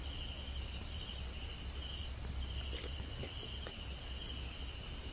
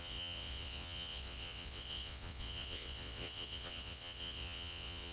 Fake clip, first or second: second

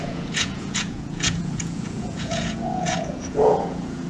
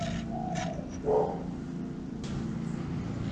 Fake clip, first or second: first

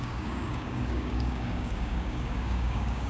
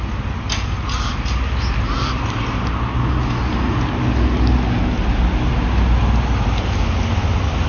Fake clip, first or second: first